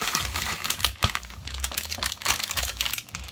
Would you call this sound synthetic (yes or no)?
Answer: yes